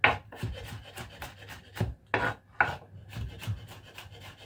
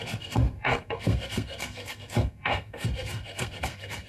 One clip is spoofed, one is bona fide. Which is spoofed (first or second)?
second